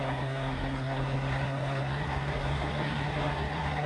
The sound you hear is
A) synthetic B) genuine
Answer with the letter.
A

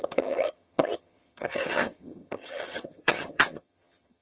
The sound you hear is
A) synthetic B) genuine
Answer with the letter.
A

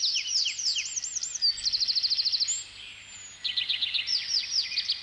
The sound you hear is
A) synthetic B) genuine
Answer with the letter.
B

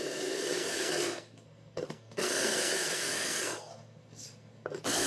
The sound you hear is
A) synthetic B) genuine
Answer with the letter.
A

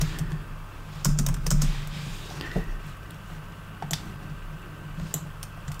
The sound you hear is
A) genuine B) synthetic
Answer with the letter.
A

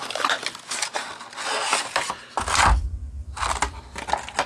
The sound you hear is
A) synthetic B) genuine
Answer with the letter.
B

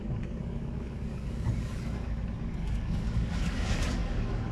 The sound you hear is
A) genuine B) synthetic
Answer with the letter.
B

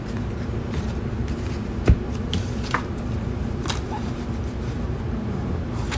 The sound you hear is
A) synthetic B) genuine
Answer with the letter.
A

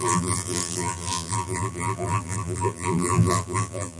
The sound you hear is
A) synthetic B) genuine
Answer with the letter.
A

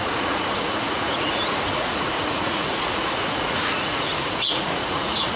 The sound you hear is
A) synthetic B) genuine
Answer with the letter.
A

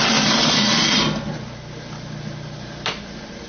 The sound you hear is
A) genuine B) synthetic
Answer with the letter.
A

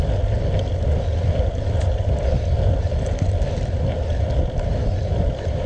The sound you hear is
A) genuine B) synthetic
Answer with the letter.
A